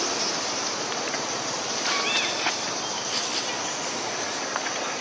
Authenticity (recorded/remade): recorded